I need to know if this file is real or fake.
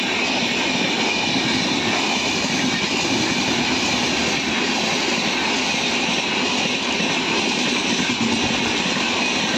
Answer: real